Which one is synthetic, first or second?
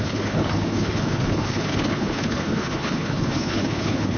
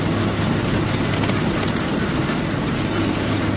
first